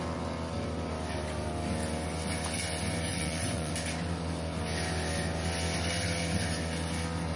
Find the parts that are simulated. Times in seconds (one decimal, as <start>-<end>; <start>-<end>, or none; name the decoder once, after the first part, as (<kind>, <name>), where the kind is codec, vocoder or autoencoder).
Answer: 3.1-3.7 (vocoder, Vocos)